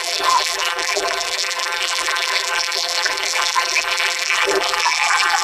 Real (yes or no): no